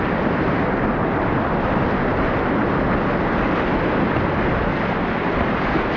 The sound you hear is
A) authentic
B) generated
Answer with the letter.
A